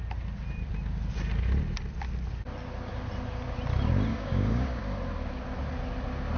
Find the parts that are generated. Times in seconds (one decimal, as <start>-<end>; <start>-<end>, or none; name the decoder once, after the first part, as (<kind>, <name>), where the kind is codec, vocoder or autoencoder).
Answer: 4.1-4.8 (codec, DAC)